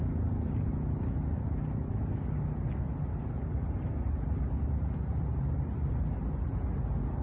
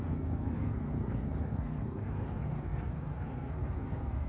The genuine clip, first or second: first